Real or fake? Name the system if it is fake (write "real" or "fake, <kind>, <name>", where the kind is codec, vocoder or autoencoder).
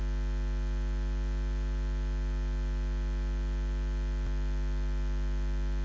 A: real